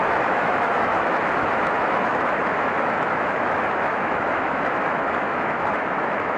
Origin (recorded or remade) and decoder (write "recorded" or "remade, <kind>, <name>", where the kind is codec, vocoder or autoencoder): remade, autoencoder, DAC-VAE